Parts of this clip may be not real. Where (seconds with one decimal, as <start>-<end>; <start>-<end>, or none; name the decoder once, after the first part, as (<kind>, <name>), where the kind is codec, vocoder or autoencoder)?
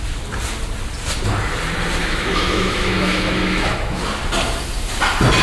2.0-4.0 (autoencoder, DAC-VAE)